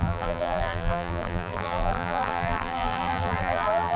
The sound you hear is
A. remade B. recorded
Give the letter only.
A